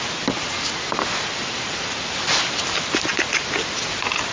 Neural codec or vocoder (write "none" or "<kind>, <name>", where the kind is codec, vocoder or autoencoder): none